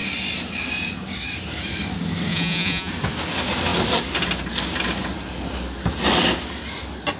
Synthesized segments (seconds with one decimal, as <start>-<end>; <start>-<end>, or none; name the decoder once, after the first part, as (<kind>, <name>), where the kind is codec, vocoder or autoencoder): 2.3-2.9 (vocoder, Vocos)